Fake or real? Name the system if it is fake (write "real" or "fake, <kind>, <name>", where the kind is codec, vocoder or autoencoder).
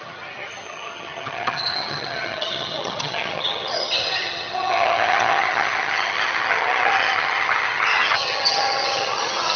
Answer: fake, vocoder, HiFi-GAN